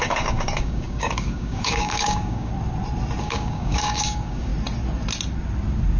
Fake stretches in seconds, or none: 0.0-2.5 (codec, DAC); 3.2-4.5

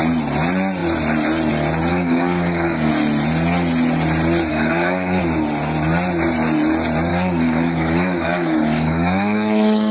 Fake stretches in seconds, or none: 1.9-2.9 (codec, DAC); 4.5-5.2; 7.1-9.9

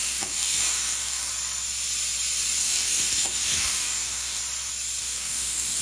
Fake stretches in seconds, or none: 0.0-1.3 (codec, DAC); 2.6-4.4; 5.0-5.8

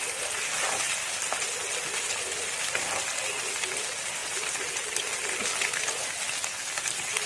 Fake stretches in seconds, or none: none